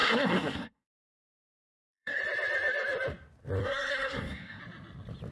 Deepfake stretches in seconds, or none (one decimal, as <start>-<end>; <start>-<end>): 0.0-2.2; 3.6-4.6